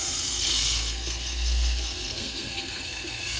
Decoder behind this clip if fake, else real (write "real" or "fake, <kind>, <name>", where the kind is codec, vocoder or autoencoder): fake, codec, SNAC